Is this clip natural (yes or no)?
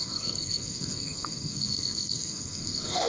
no